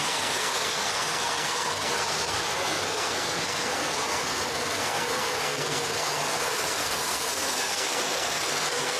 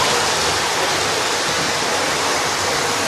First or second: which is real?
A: second